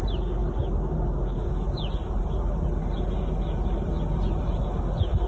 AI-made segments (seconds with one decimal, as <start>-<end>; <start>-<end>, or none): none